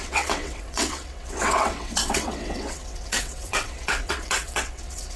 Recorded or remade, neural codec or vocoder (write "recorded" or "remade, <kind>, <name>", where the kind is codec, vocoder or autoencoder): remade, vocoder, WaveNeXt